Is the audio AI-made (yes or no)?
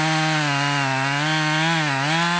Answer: no